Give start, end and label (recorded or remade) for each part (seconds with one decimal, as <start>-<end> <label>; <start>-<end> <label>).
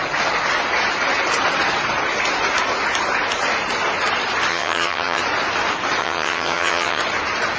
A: 0.0-4.5 recorded; 4.5-5.2 remade; 5.2-6.0 recorded; 6.0-7.0 remade; 7.0-7.6 recorded